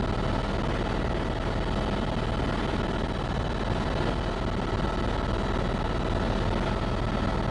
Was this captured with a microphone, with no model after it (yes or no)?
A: yes